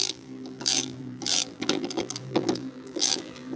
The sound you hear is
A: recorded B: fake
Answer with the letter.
B